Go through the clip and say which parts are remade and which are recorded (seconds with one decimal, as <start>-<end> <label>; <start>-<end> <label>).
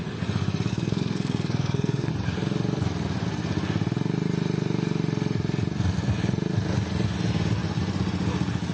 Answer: 0.0-0.7 recorded; 0.7-2.1 remade; 2.1-8.7 recorded